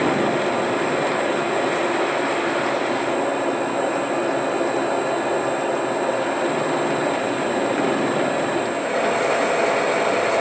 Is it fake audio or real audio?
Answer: real